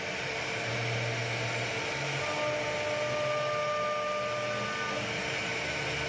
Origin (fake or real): real